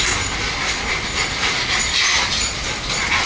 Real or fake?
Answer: real